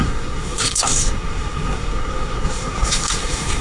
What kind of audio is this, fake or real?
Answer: fake